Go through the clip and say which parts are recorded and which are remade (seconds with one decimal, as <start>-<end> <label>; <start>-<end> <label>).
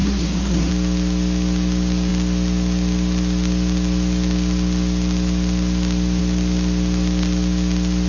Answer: 0.0-0.7 remade; 0.7-8.1 recorded